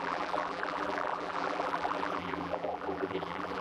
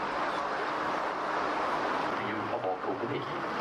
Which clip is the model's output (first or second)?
first